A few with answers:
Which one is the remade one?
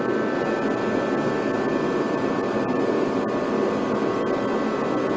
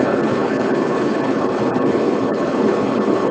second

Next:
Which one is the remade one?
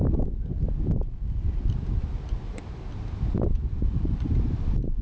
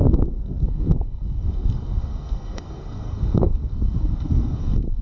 second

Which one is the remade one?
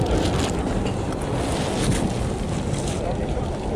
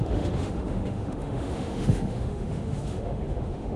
second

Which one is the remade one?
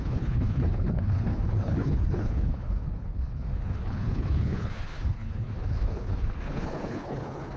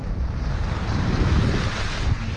first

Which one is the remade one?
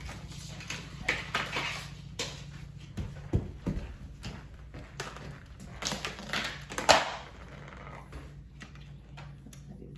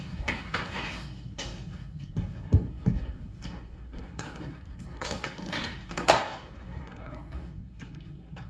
second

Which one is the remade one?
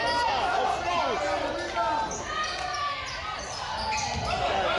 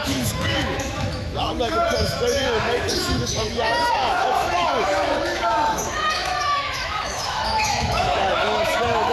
second